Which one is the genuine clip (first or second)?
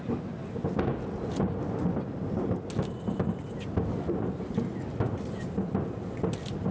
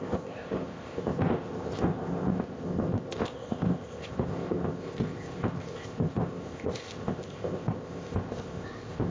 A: first